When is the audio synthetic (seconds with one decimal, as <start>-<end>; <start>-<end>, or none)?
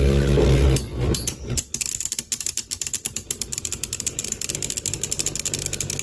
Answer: 0.9-4.5